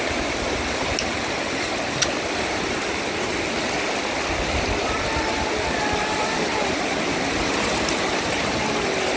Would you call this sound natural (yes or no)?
yes